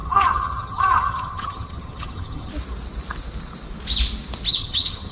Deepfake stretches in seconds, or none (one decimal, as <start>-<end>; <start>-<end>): 0.0-2.5; 4.5-5.1